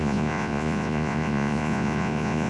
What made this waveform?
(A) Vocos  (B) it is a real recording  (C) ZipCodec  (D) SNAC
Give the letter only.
A